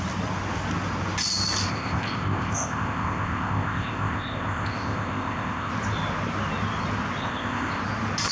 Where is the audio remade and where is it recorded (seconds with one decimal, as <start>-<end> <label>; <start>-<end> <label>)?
0.0-1.7 recorded; 1.7-5.7 remade; 5.7-7.2 recorded; 7.2-7.8 remade; 7.8-8.3 recorded